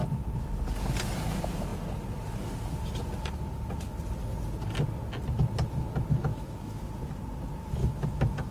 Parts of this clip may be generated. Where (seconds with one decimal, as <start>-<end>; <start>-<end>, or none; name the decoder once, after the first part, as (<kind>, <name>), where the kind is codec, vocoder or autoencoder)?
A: 6.3-6.9 (autoencoder, DAC-VAE); 7.8-8.5